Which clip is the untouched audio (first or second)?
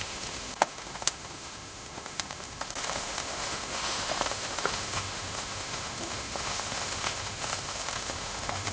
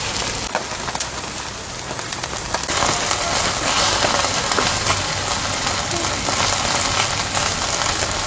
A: second